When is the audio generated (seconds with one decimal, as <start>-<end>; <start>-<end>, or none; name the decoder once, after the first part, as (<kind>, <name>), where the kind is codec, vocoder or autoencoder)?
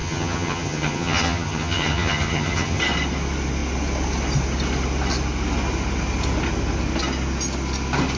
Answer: 0.0-2.8 (vocoder, HiFi-GAN)